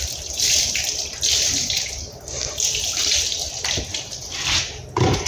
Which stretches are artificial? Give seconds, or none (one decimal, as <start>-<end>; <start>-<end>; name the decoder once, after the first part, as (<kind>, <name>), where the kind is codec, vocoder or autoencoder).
none